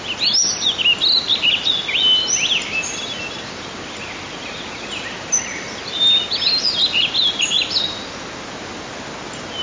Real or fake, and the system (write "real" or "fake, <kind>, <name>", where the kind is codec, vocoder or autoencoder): real